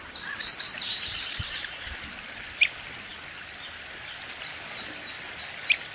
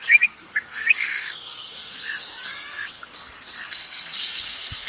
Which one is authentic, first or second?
first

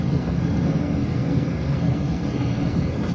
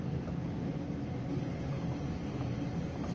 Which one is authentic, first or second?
second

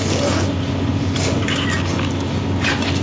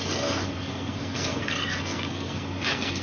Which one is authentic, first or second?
first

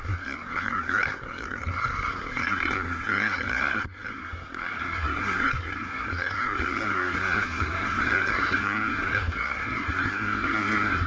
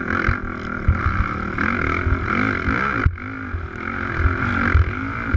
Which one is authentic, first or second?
second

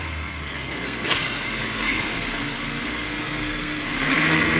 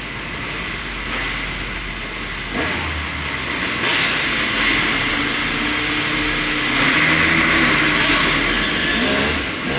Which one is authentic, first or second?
second